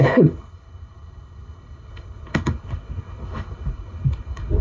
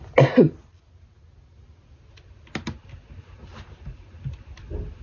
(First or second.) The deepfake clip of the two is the first